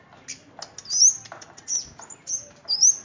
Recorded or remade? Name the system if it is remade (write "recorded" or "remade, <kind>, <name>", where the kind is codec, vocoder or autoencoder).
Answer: recorded